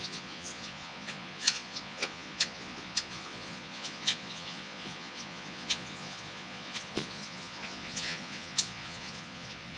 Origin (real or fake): fake